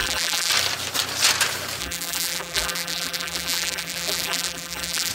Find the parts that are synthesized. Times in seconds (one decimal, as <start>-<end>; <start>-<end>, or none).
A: 0.0-0.5; 1.8-5.1